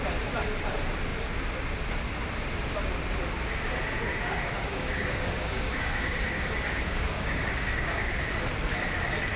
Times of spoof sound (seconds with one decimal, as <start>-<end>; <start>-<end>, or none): 4.1-8.2